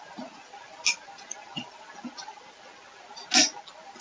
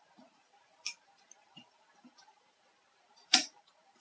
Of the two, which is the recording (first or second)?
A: first